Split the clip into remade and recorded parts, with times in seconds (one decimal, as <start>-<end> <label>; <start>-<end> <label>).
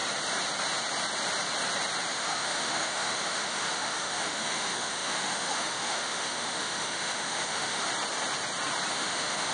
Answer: 0.0-2.1 recorded; 2.1-7.9 remade; 7.9-8.9 recorded; 8.9-9.5 remade